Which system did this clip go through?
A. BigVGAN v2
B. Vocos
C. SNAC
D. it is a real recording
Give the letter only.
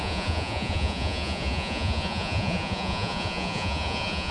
B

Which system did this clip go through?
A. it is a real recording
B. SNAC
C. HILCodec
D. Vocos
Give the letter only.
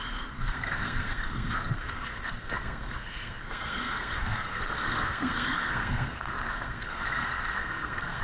B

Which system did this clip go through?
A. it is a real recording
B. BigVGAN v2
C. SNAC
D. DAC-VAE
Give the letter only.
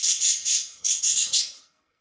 C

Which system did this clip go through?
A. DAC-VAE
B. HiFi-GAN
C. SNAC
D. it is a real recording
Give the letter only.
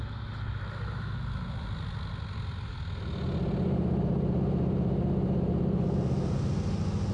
D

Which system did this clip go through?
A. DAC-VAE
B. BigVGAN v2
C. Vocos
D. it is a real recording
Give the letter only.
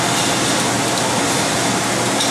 D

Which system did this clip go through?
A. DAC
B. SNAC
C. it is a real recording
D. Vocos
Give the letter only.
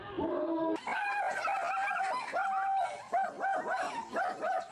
C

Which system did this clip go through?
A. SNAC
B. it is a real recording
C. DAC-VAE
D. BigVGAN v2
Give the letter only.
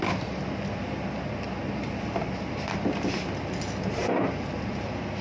B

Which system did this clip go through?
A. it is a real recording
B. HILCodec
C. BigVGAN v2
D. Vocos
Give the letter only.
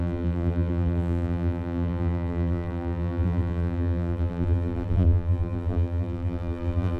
C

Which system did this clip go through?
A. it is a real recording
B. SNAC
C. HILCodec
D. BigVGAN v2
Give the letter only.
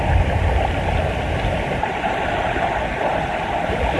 A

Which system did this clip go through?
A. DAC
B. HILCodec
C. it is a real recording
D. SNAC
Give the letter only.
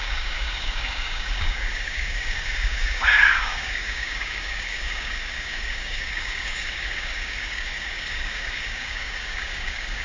A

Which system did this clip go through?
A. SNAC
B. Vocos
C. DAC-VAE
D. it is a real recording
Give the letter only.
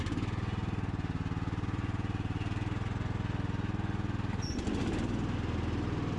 D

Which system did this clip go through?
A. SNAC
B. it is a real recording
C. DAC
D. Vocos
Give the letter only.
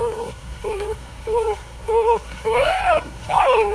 A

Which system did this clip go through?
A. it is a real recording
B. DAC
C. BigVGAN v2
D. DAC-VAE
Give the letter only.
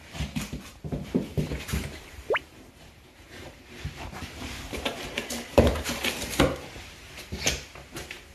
C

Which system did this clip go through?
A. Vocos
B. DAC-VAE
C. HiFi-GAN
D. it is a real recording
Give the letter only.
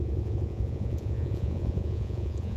A